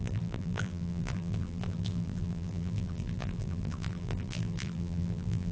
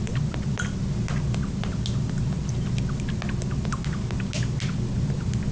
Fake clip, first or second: first